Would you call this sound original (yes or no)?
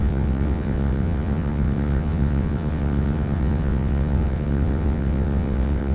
no